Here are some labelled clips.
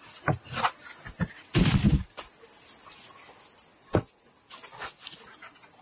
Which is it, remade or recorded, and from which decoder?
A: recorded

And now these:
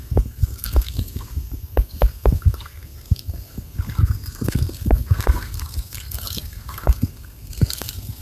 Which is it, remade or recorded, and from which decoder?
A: remade, codec, SNAC